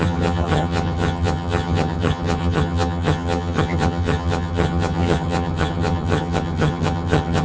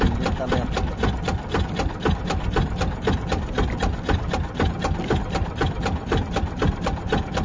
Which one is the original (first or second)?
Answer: second